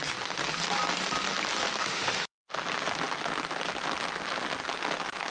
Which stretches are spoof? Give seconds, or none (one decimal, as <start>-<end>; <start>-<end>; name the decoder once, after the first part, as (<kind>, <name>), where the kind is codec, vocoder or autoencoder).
1.8-2.5 (autoencoder, DAC-VAE)